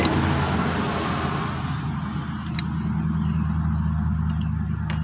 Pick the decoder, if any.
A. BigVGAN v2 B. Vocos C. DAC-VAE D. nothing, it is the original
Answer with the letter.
D